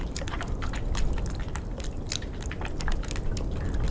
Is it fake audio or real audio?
real